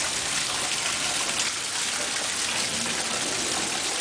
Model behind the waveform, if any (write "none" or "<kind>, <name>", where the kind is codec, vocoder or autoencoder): none